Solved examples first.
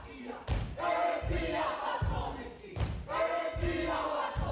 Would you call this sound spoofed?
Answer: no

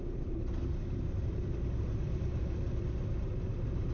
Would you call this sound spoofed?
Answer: no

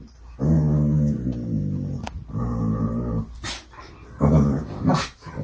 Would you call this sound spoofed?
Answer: no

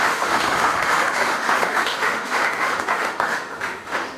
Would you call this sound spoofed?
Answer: yes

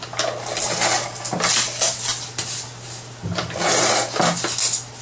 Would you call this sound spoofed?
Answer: no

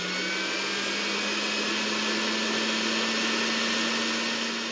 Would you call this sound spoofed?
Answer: no